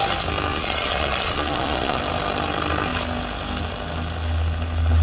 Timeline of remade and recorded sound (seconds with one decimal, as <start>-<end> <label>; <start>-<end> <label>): 0.0-0.5 recorded; 0.5-2.0 remade; 2.0-5.0 recorded